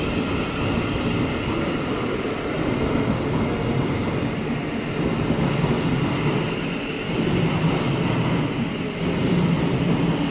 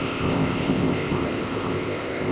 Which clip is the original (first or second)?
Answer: first